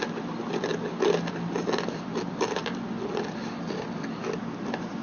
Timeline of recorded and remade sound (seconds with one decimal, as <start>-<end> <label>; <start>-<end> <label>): 0.0-5.0 recorded